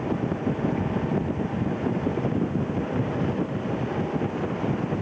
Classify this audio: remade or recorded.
recorded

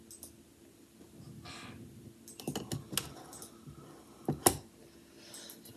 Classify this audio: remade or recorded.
recorded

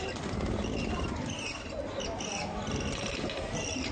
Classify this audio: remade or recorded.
recorded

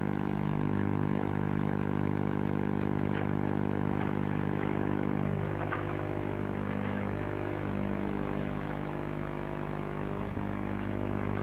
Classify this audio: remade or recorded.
remade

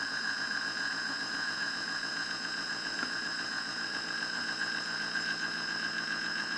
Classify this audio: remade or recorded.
remade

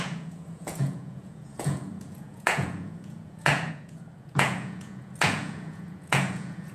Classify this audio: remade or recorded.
remade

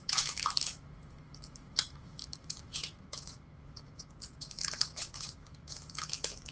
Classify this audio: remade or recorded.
remade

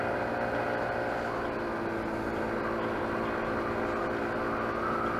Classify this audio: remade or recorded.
recorded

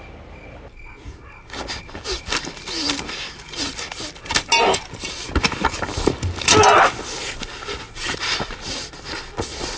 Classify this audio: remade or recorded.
recorded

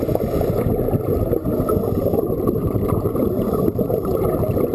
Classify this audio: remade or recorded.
recorded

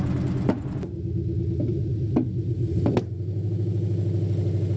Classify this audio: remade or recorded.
recorded